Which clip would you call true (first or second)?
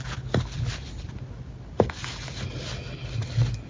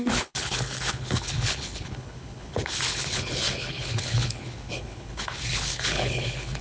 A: first